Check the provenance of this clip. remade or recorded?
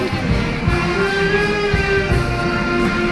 recorded